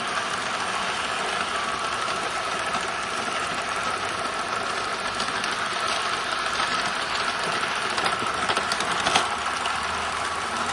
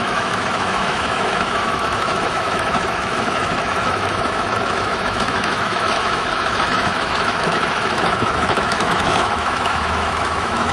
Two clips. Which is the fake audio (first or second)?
second